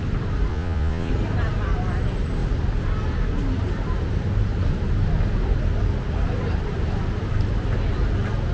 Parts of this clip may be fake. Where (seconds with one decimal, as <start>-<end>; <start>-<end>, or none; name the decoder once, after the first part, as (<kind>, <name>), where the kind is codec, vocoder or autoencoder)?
0.5-1.1 (vocoder, Vocos)